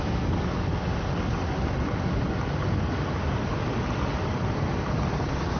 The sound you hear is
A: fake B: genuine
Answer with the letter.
B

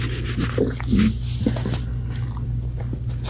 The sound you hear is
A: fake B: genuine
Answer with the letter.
B